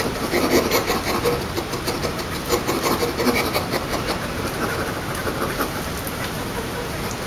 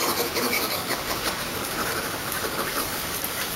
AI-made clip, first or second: second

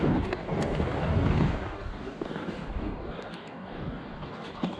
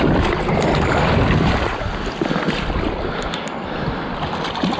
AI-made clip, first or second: first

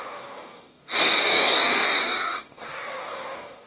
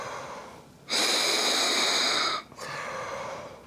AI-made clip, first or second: first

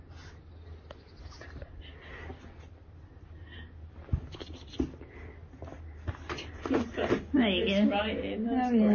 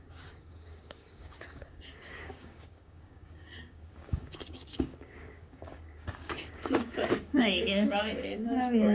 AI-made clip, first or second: second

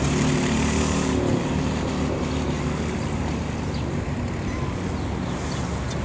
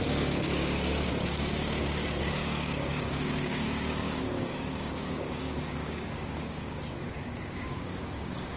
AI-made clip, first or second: second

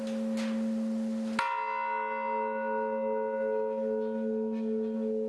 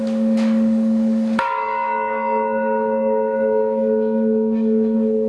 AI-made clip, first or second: second